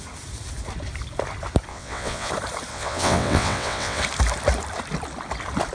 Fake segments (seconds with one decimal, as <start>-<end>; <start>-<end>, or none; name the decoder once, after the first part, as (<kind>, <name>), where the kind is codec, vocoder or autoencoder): 1.7-2.3 (vocoder, WaveNeXt); 2.7-4.0